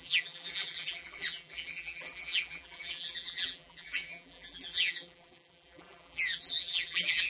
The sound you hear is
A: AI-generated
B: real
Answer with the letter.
A